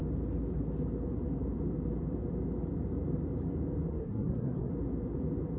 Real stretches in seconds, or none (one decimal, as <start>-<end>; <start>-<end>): 0.0-3.9; 4.7-5.6